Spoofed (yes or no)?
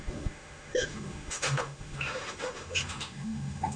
yes